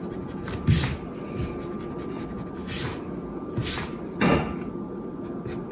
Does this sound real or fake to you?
real